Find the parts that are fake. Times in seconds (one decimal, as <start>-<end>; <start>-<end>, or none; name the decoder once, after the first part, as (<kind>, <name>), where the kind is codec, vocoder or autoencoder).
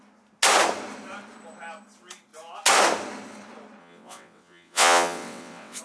3.8-5.8 (vocoder, WaveNeXt)